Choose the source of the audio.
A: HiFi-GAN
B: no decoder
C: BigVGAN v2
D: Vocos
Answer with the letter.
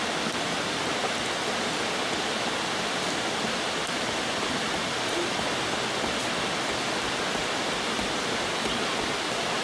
B